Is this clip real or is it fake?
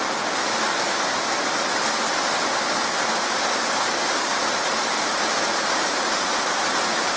real